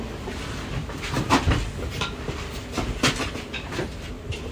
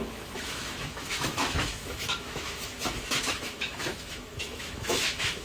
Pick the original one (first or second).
first